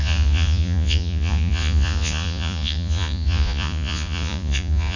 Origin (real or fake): fake